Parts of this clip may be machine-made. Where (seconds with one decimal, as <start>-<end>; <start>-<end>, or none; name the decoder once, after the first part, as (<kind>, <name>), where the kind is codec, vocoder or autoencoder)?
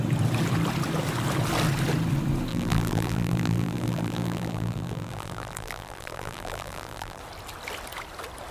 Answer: 2.5-7.2 (vocoder, BigVGAN v2)